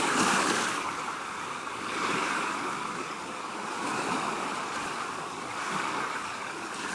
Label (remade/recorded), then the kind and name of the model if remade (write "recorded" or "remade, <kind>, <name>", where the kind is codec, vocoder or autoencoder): remade, codec, DAC